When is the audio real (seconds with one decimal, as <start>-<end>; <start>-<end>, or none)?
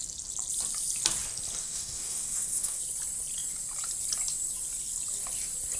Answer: 0.0-1.6; 2.8-5.8